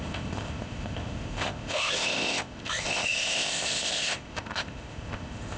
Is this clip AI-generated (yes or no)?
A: yes